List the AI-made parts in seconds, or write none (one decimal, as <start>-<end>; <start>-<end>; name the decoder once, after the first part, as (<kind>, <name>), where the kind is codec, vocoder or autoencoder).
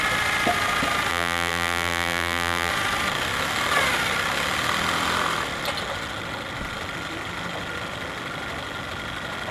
1.1-2.7 (vocoder, BigVGAN v2)